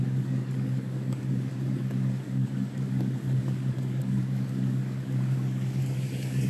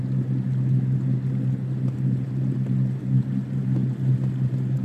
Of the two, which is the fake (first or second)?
first